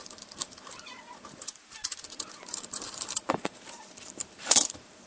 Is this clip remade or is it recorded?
remade